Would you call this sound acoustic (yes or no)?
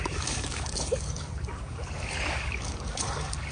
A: no